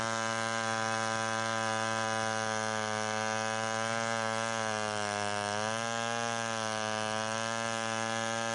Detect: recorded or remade recorded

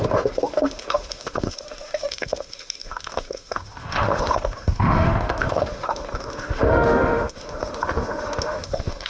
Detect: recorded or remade remade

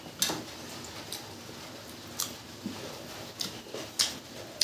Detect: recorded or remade recorded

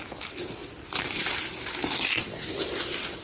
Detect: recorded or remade recorded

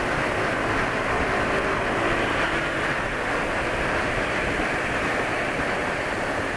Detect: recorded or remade recorded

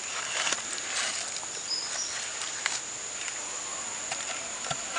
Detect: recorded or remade recorded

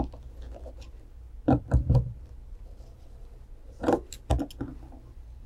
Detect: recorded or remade recorded